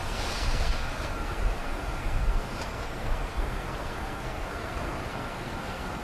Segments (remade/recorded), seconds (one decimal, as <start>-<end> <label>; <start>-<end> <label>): 0.0-6.0 remade